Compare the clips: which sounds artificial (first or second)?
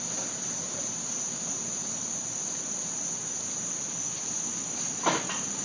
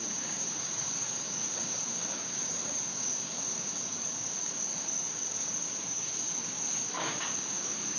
second